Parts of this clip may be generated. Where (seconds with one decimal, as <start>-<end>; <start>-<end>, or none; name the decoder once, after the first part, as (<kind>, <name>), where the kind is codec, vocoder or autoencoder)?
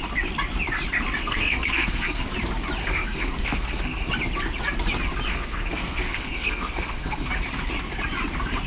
1.2-2.2 (codec, SNAC); 2.8-4.1; 5.3-7.3